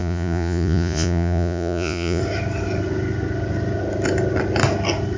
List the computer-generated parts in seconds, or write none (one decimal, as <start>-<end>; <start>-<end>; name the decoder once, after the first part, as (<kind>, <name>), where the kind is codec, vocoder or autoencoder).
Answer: 0.0-2.2 (vocoder, Vocos)